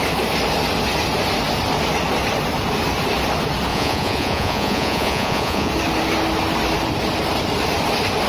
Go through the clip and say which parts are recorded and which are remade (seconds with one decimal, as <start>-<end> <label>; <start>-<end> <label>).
0.0-3.7 recorded; 3.7-5.7 remade; 5.7-8.3 recorded